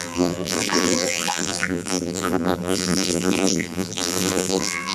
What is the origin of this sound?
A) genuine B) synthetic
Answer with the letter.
B